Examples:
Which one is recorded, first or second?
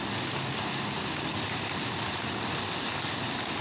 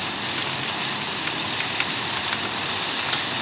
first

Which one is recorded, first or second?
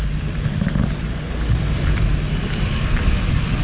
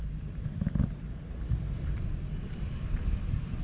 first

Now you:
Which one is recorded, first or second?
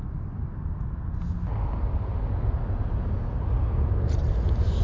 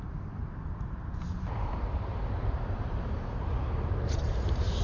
first